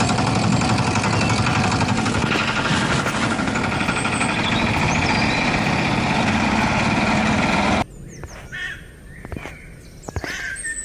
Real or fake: real